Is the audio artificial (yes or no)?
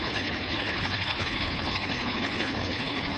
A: yes